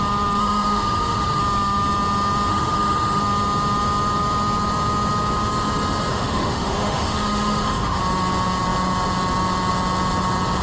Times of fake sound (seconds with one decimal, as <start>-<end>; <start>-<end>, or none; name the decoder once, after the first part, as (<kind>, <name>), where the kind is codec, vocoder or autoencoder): 0.4-1.4 (autoencoder, DAC-VAE); 2.5-3.2; 6.1-8.0